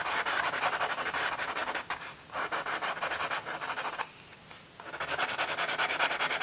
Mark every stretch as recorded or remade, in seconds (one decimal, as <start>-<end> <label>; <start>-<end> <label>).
0.0-6.4 recorded